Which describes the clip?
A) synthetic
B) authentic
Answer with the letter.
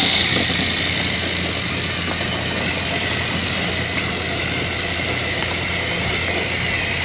B